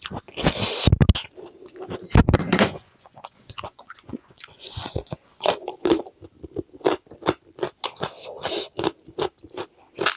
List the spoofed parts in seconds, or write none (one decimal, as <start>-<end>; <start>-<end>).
2.2-6.0